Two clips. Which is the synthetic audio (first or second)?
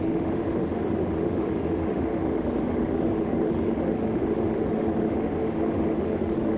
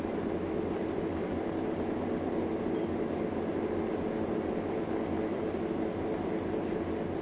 first